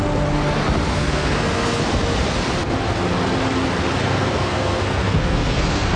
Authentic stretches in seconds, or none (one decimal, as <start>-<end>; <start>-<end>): 0.0-0.9; 1.8-4.0